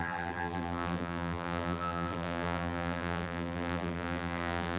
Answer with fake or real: fake